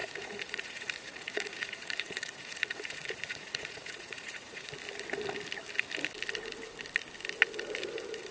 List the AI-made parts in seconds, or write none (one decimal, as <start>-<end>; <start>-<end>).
0.0-4.7